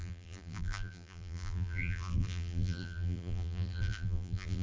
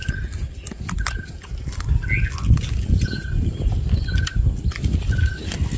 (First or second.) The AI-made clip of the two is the first